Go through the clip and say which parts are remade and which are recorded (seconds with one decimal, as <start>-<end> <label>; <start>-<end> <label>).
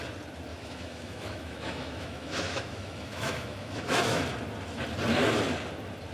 0.0-0.5 recorded; 0.5-4.2 remade; 4.2-6.1 recorded